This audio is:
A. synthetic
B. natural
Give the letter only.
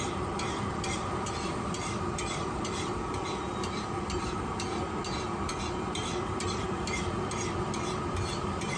A